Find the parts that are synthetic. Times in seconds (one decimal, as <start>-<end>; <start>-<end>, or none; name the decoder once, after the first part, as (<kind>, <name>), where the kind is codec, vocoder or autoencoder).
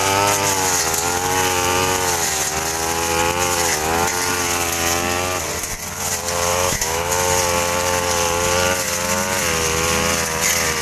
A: 6.5-7.1 (autoencoder, DAC-VAE)